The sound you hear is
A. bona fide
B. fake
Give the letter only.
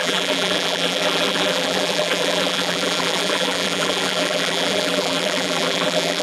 B